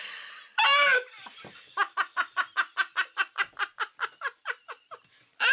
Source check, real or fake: fake